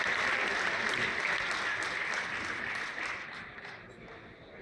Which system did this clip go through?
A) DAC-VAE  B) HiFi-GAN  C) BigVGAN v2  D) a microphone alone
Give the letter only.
D